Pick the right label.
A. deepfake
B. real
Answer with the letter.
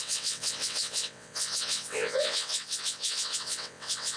A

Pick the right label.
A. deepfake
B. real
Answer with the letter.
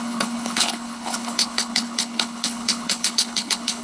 A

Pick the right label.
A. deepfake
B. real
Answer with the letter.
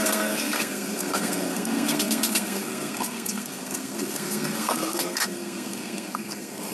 A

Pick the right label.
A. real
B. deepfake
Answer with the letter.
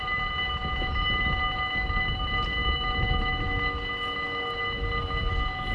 A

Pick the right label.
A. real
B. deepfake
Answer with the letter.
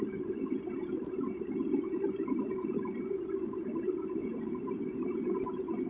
B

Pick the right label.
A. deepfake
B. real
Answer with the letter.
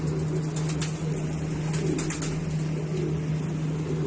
B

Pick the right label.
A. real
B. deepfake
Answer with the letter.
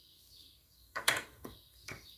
B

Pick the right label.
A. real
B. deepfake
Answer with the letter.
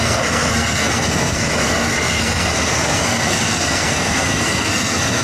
B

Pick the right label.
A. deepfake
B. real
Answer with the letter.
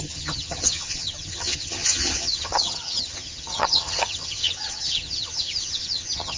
A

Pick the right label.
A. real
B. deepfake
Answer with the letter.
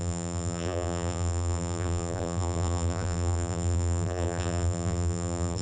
B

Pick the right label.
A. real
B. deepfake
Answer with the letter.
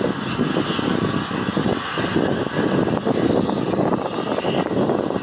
A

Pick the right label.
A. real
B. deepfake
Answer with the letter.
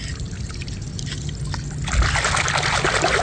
A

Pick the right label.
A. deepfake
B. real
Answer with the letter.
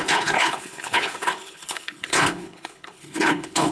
A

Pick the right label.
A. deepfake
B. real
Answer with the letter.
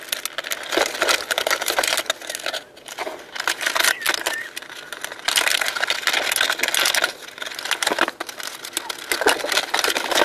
B